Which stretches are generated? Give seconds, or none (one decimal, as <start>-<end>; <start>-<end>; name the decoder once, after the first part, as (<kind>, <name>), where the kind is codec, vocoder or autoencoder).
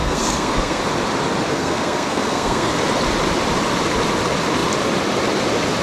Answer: 0.0-0.8 (codec, SNAC); 1.5-2.7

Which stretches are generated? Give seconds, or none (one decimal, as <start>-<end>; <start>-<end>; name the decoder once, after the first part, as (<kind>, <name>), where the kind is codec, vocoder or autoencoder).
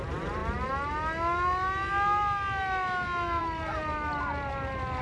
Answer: 0.0-0.4 (vocoder, BigVGAN v2); 3.4-5.0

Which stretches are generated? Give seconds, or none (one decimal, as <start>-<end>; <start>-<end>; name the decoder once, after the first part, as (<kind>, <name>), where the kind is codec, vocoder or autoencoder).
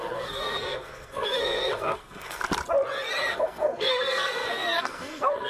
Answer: 0.0-2.4 (codec, SNAC); 3.3-5.5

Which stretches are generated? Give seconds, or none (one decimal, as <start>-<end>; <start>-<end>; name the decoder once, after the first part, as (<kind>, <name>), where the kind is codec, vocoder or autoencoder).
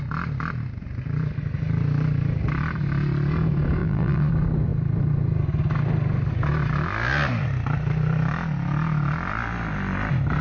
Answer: 3.8-4.3 (vocoder, Vocos)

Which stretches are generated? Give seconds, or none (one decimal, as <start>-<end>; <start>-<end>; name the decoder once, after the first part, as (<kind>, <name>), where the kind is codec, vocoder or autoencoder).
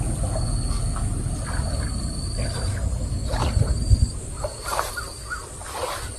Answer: 3.2-4.9 (vocoder, BigVGAN v2)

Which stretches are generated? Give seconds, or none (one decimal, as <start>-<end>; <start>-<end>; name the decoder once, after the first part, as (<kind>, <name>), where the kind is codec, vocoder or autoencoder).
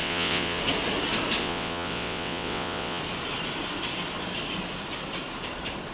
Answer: 0.0-0.6 (vocoder, WaveNeXt); 1.4-3.0